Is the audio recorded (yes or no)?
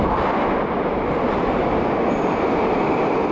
yes